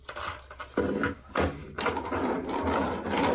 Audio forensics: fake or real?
real